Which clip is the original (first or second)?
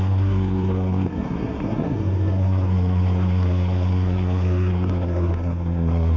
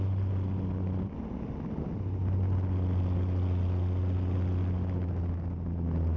second